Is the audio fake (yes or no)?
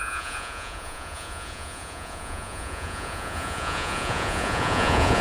yes